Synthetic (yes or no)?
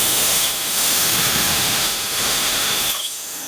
yes